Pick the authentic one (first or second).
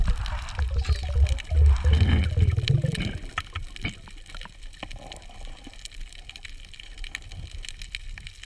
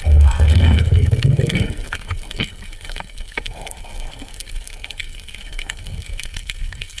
first